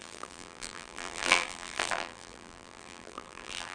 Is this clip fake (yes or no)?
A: yes